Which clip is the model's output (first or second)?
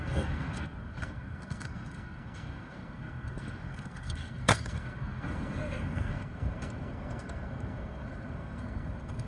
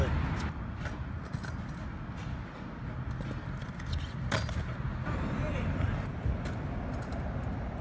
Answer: first